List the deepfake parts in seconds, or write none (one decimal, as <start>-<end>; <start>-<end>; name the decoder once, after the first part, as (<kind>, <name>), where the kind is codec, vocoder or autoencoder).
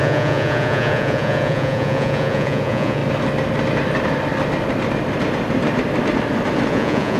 0.0-3.0 (vocoder, Vocos); 6.7-7.2